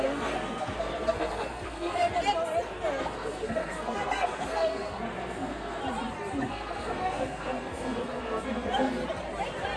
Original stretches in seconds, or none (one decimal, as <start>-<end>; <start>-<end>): 2.1-3.0; 5.8-6.4; 9.0-9.8